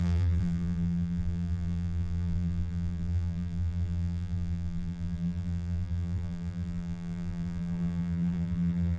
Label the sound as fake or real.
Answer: fake